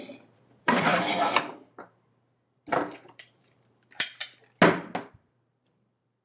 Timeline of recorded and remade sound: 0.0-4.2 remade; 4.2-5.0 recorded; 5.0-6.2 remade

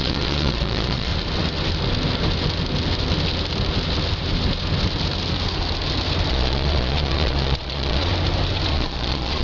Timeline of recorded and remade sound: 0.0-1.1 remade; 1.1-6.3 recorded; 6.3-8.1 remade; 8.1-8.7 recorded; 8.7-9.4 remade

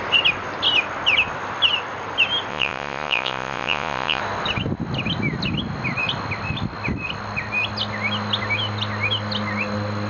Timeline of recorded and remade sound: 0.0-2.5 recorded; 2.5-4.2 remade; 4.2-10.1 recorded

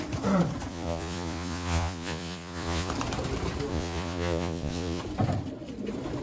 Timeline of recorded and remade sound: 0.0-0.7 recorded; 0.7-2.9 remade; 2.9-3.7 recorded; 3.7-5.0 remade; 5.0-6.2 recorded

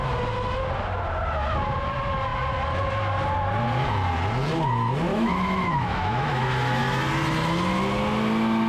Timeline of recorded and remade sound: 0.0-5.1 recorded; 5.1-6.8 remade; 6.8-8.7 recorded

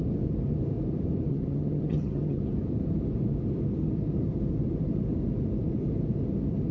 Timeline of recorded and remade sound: 0.0-1.3 recorded; 1.3-2.4 remade; 2.4-6.7 recorded

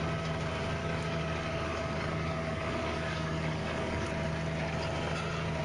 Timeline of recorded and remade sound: 0.0-0.8 recorded; 0.8-4.1 remade; 4.1-5.6 recorded

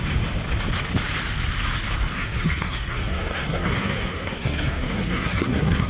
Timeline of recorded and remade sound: 0.0-2.1 recorded; 2.1-5.9 remade